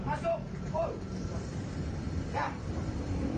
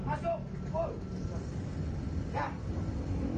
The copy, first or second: first